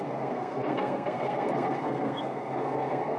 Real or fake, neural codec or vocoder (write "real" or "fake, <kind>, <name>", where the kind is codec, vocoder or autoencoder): fake, codec, SNAC